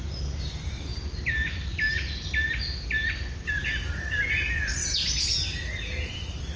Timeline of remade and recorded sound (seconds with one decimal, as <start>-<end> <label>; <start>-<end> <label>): 0.0-6.6 recorded